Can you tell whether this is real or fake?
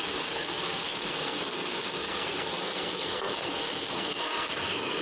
fake